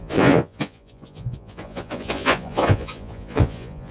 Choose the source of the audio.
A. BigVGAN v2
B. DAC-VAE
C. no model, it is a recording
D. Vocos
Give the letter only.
D